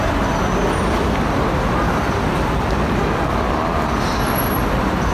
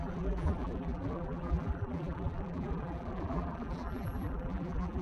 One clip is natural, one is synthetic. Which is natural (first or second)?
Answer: first